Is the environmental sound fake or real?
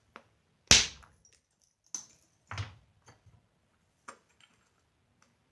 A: real